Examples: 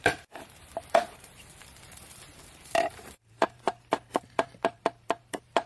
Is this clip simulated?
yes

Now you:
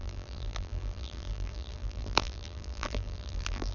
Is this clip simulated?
yes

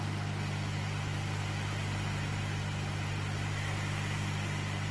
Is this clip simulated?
no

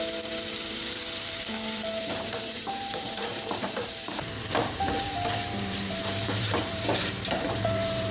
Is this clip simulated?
yes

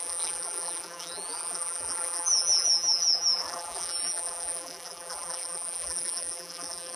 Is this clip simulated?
yes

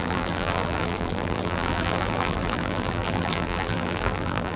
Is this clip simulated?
yes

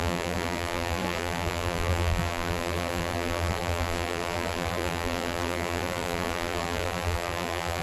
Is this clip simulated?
yes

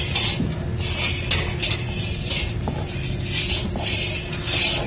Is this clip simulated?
no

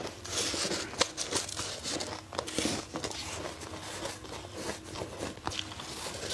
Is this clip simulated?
no